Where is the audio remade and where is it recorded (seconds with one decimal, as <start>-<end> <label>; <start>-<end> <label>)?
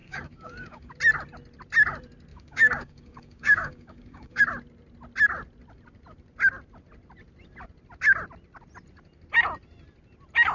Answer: 0.0-0.9 remade; 0.9-2.3 recorded; 2.3-4.4 remade; 4.4-10.5 recorded